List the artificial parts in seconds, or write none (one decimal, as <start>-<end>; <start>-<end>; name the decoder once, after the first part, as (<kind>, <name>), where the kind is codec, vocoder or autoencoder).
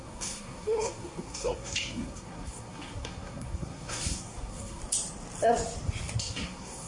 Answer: 0.0-4.8 (codec, SNAC); 6.2-6.9